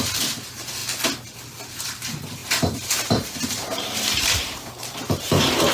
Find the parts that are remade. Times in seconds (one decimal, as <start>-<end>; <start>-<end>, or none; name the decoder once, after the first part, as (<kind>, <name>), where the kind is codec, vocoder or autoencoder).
0.0-0.8 (vocoder, BigVGAN v2); 1.8-5.7